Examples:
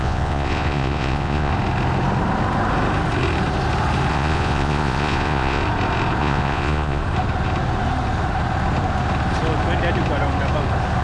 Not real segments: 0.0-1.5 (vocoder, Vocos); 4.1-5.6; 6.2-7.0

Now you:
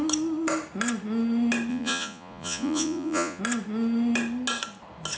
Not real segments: 1.7-3.4 (vocoder, Vocos)

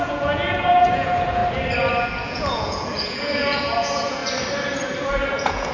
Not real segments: 0.0-1.4 (vocoder, Vocos); 2.0-4.2; 5.3-5.7

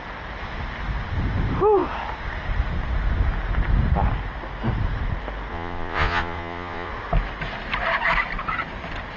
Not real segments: 5.5-6.9 (vocoder, Vocos)

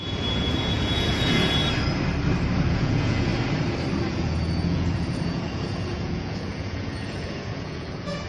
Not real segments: 0.0-1.6 (vocoder, Vocos); 2.7-3.3; 4.1-8.3

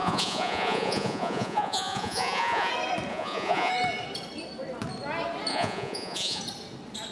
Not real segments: 0.0-2.7 (vocoder, Vocos); 3.1-3.7; 5.5-6.4

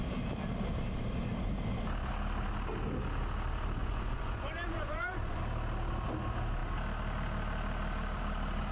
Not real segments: 3.8-5.4 (vocoder, Vocos)

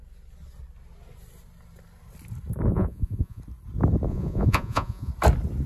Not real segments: 2.7-3.4 (vocoder, Vocos); 4.1-5.1